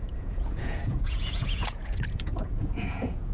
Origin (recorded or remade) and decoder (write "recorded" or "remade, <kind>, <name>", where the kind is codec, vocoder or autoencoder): remade, vocoder, Vocos